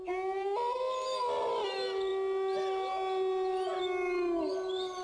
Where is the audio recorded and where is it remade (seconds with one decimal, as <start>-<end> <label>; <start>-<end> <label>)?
0.0-5.0 recorded